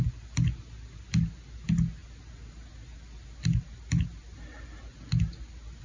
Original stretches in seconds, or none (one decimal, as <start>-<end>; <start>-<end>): 0.0-5.8